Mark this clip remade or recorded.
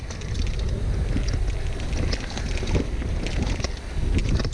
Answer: recorded